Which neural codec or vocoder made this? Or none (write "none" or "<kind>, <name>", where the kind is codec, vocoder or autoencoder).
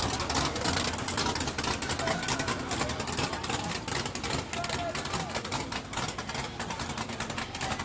none